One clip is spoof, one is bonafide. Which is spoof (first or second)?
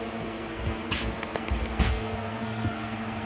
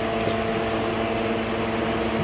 first